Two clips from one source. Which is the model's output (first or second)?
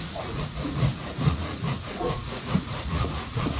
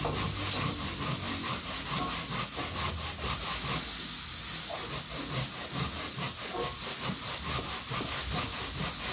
first